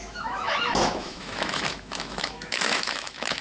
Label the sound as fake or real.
fake